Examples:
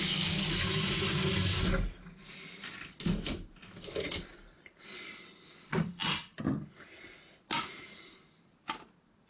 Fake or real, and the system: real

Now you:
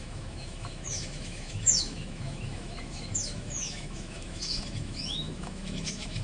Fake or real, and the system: fake, autoencoder, DAC-VAE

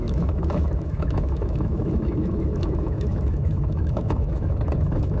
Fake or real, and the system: fake, autoencoder, DAC-VAE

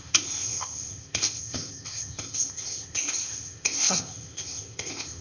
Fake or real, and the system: fake, codec, ZipCodec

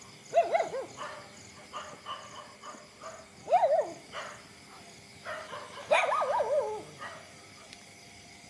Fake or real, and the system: real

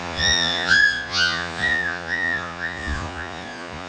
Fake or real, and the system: fake, vocoder, Vocos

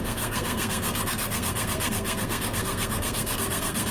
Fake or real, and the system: fake, codec, SNAC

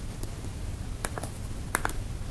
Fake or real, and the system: real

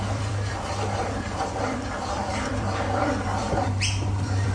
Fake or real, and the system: fake, vocoder, BigVGAN v2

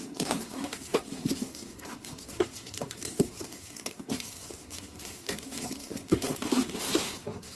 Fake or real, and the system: fake, codec, SNAC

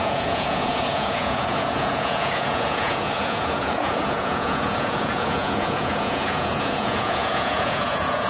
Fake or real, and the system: fake, vocoder, Vocos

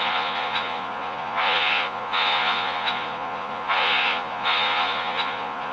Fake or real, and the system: fake, vocoder, Vocos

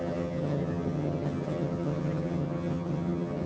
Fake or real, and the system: fake, vocoder, HiFi-GAN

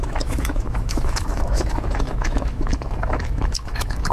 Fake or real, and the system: fake, autoencoder, DAC-VAE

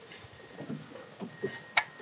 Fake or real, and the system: real